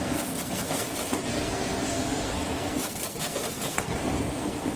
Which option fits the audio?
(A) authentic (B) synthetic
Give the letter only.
B